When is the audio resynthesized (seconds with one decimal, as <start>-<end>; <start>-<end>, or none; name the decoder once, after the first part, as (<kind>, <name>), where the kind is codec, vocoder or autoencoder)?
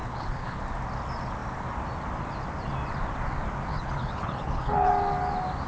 0.0-0.6 (codec, HILCodec); 3.7-4.9